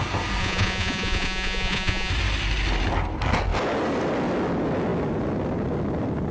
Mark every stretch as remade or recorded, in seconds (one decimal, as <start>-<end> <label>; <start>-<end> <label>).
0.0-0.4 recorded; 0.4-2.1 remade; 2.1-6.3 recorded